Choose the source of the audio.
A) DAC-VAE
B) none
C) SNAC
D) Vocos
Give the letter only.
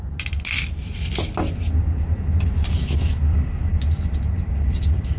B